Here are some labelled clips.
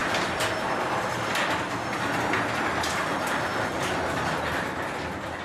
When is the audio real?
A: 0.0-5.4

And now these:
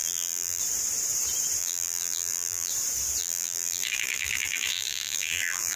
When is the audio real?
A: 0.6-1.6; 2.7-3.2

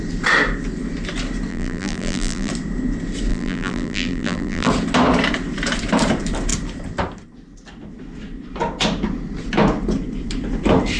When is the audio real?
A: 0.0-1.5; 2.5-3.3; 4.7-11.0

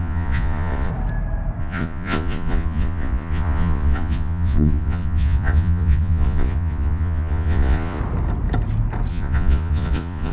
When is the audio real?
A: 0.9-1.6; 8.0-9.1

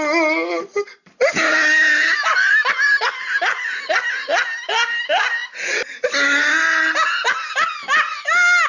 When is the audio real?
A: 0.0-8.7

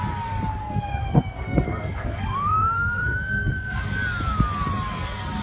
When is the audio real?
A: 0.0-0.6; 3.8-5.4